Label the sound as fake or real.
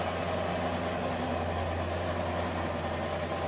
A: real